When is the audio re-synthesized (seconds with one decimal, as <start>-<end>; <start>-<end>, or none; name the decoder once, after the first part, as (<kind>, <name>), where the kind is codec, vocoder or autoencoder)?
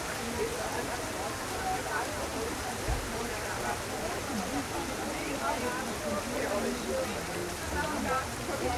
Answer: 0.7-1.4 (vocoder, BigVGAN v2); 2.3-6.4; 7.4-8.0